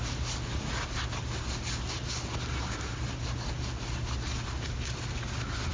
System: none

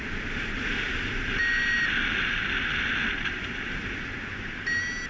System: none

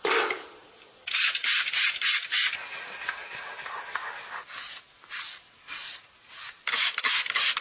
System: none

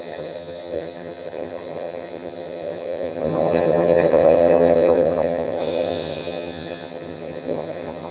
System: vocoder, HiFi-GAN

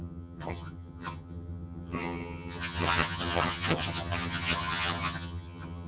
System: vocoder, HiFi-GAN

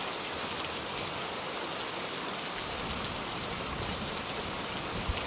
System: none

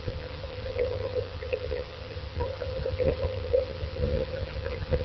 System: vocoder, HiFi-GAN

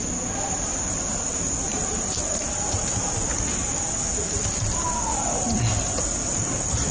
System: none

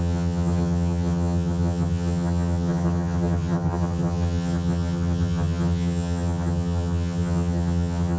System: vocoder, HiFi-GAN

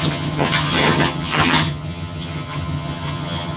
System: vocoder, HiFi-GAN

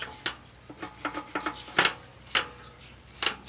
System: none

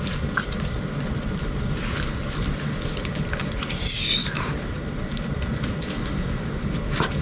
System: none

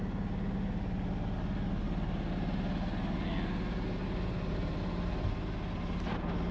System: none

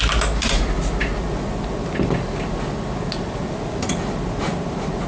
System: none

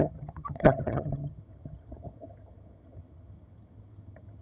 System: vocoder, HiFi-GAN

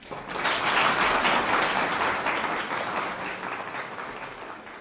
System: none